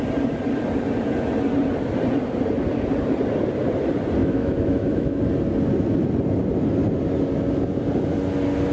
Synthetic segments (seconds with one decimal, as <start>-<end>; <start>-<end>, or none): 4.2-5.2